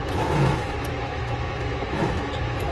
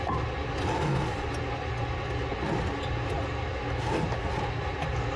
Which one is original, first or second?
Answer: second